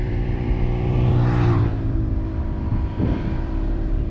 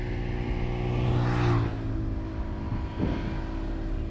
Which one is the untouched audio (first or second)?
second